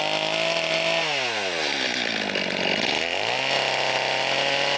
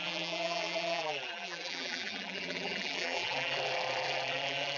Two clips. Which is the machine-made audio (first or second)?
second